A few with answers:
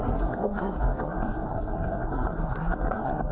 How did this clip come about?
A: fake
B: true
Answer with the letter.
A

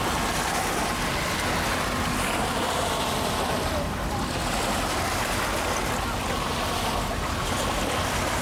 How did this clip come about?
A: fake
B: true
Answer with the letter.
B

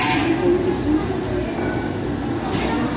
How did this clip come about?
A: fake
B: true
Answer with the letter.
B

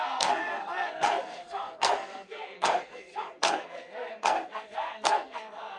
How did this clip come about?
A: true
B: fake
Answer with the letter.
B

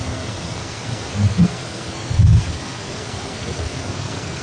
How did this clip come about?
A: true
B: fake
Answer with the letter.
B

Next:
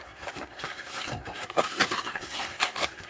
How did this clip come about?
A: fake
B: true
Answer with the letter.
A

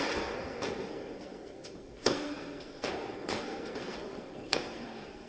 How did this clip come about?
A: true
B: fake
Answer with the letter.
B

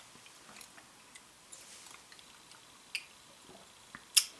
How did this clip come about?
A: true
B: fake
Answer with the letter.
A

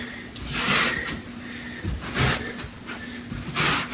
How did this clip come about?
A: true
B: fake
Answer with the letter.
A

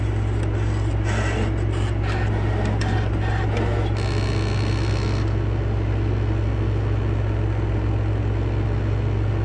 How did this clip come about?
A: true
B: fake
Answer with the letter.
A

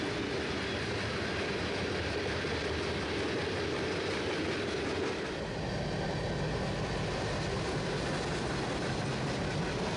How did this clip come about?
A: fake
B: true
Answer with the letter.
B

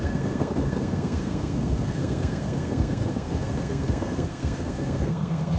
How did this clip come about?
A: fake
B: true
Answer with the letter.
A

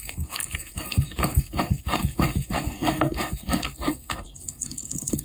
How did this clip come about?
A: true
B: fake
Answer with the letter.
B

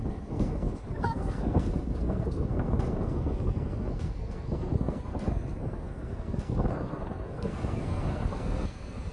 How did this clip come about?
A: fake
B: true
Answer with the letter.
A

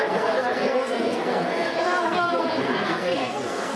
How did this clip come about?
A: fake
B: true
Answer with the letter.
A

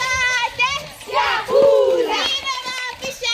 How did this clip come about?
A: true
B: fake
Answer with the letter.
A